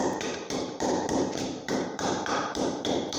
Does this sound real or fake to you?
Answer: fake